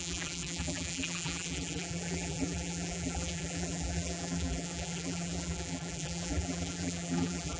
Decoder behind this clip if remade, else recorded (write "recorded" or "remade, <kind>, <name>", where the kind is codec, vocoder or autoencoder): remade, vocoder, BigVGAN v2